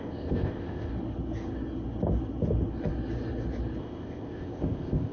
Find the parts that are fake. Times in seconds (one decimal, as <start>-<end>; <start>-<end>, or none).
0.0-0.9; 3.8-5.1